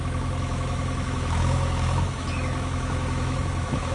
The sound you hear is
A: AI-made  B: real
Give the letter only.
A